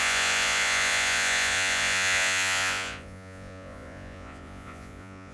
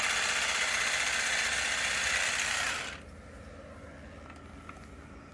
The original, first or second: second